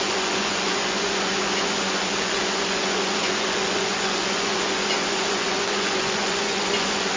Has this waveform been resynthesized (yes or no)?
yes